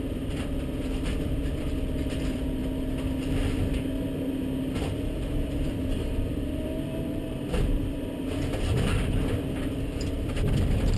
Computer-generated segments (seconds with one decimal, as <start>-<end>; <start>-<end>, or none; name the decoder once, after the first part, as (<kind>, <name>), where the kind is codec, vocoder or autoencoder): 0.0-2.6 (vocoder, BigVGAN v2); 5.2-11.0